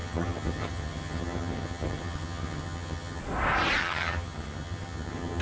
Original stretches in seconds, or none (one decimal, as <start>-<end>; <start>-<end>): 3.2-3.8